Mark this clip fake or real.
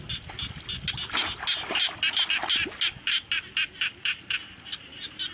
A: real